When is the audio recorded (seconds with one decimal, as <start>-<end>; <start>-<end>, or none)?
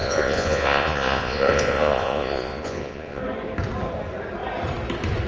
3.2-5.3